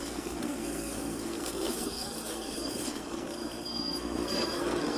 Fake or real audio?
fake